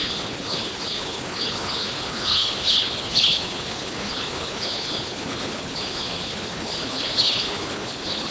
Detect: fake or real fake